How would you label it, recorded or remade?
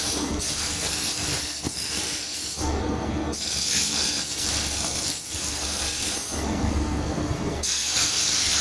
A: remade